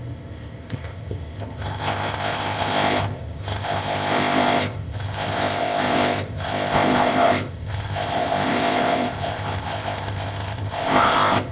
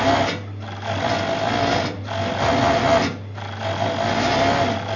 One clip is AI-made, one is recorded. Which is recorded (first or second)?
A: second